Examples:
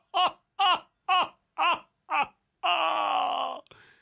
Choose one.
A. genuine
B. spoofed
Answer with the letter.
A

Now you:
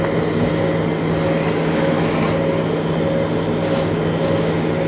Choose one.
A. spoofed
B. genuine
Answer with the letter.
B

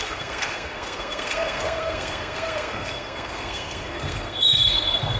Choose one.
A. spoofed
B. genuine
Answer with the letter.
A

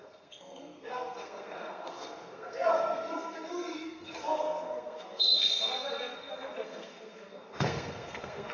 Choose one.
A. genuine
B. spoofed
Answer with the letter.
B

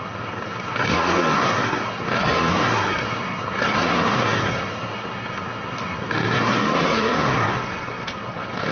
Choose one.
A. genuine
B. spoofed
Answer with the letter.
B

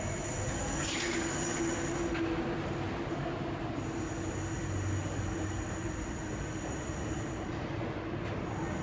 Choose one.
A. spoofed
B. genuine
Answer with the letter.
B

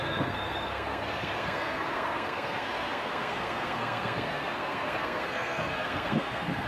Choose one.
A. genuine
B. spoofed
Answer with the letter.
B